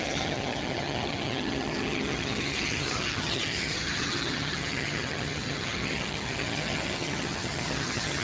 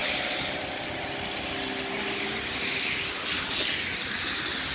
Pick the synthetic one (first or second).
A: first